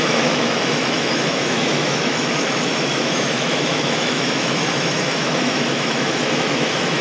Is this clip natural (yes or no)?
no